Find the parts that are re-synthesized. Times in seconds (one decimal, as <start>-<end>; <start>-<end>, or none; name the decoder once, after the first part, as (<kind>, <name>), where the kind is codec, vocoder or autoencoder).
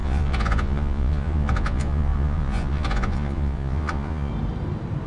0.0-4.3 (vocoder, Vocos)